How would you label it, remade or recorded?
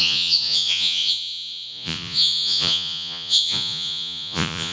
remade